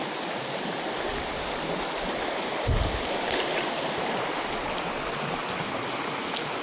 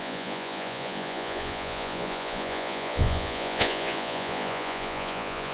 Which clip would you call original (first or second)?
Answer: first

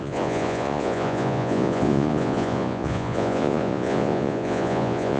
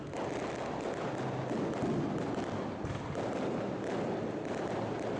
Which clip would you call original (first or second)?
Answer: second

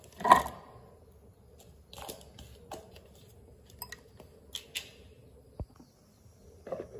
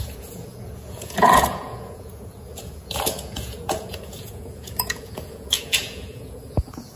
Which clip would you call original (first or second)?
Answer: first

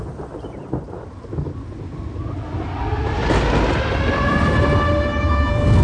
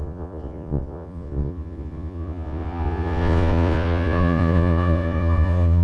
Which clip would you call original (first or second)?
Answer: first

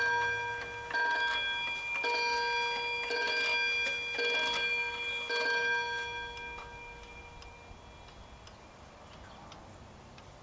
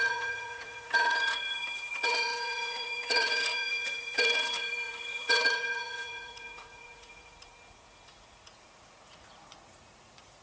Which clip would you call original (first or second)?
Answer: first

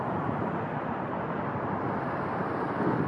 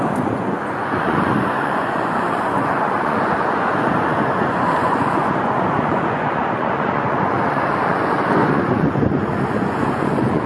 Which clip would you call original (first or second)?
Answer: first